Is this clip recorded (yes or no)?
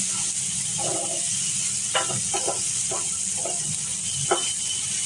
yes